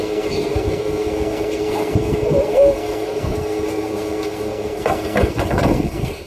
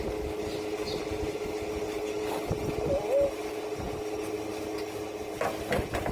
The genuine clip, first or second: second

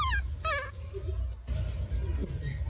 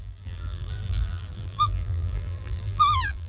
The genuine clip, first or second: first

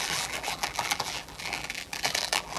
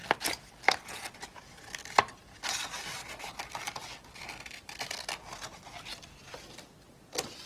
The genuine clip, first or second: second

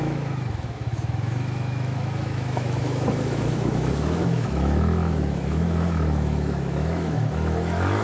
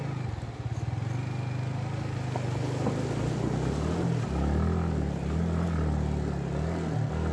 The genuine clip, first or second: second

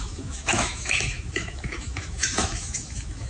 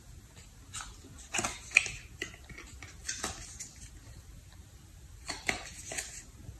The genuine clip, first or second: second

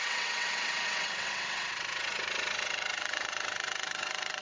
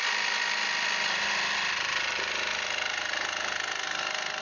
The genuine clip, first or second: second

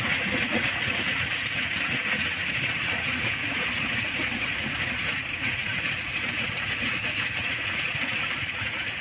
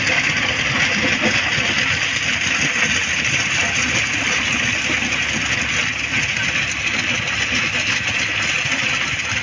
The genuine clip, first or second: second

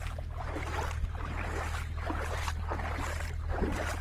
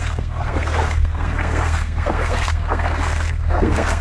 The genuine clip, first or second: first